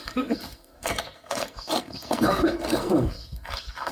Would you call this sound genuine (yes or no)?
no